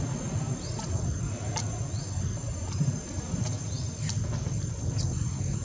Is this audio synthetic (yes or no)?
no